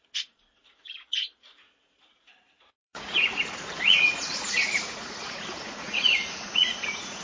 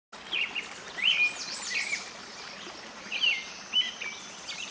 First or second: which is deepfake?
first